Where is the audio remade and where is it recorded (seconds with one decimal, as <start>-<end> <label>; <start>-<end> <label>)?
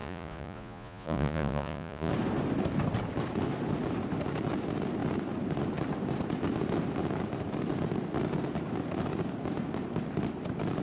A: 0.0-2.1 remade; 2.1-10.8 recorded